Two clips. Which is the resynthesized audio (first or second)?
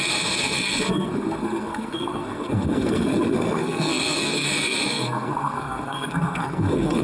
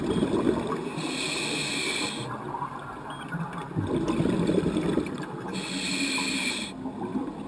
first